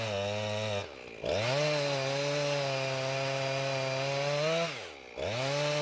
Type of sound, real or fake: real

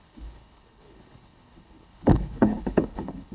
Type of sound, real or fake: fake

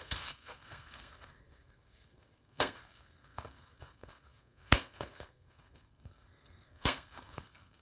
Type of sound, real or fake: fake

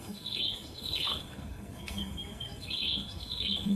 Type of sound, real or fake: fake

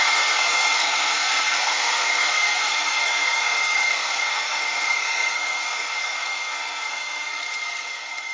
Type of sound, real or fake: fake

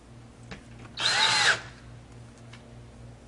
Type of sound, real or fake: real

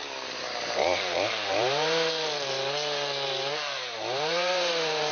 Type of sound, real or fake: fake